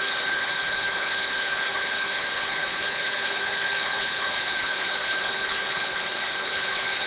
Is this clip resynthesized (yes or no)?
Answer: yes